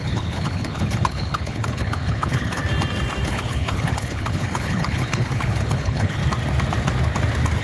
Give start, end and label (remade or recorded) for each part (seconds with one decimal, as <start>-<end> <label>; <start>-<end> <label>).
0.0-2.6 remade; 2.6-3.3 recorded; 3.3-6.2 remade; 6.2-7.6 recorded